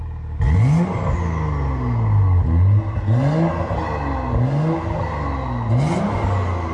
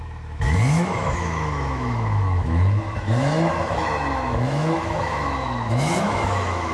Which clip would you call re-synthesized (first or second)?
second